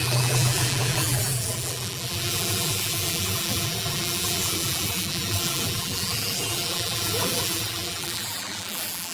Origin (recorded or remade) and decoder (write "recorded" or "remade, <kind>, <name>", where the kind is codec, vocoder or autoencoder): remade, vocoder, BigVGAN v2